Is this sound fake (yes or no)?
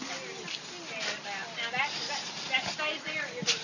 no